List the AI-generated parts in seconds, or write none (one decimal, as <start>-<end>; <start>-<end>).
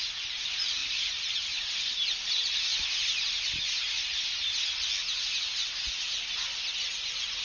none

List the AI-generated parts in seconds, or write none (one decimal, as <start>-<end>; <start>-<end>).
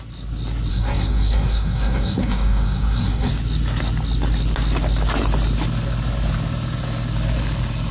0.7-3.3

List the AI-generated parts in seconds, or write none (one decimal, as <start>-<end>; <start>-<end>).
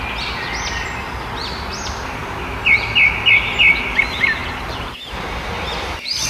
none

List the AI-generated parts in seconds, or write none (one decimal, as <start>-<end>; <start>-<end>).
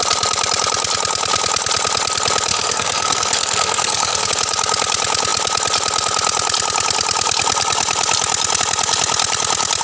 2.5-4.3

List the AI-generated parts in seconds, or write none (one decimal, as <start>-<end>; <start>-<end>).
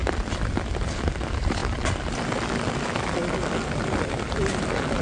none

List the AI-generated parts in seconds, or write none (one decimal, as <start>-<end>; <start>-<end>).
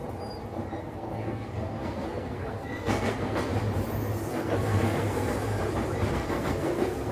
0.8-3.5; 4.3-5.5; 6.1-7.1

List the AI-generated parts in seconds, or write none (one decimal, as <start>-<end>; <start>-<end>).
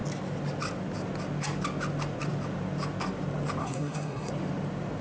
3.6-4.3